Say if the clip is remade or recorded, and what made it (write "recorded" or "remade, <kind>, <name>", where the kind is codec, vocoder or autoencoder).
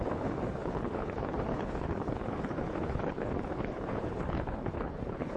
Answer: remade, codec, HILCodec